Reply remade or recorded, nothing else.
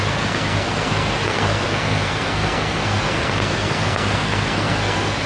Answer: remade